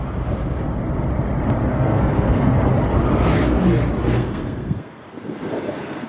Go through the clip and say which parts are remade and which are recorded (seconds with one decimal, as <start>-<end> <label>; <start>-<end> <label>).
0.0-1.7 recorded; 1.7-2.5 remade; 2.5-4.0 recorded; 4.0-6.1 remade